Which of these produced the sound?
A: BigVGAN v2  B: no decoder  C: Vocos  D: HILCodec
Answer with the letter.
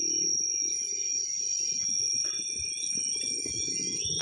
B